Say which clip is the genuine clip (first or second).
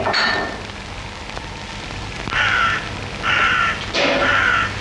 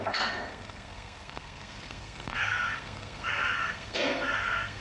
first